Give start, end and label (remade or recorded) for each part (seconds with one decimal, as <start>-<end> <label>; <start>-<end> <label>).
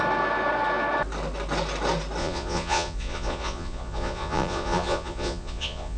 0.0-2.2 recorded; 2.2-6.0 remade